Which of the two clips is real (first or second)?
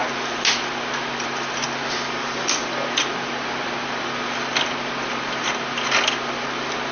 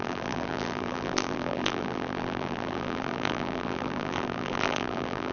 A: first